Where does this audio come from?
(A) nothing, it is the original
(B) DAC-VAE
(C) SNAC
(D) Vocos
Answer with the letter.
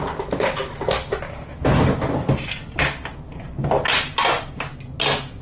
A